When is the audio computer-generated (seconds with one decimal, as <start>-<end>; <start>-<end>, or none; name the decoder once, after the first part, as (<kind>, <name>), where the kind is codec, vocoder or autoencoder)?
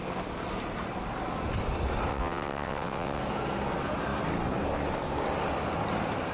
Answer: 2.1-3.2 (vocoder, WaveNeXt)